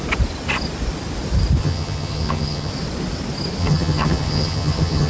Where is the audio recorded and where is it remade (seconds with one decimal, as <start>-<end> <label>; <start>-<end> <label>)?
0.0-1.6 recorded; 1.6-2.7 remade; 2.7-3.6 recorded; 3.6-5.1 remade